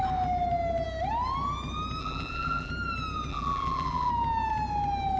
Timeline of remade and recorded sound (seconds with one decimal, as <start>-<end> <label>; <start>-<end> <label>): 0.0-2.0 recorded; 2.0-2.7 remade; 2.7-3.3 recorded; 3.3-4.1 remade; 4.1-5.2 recorded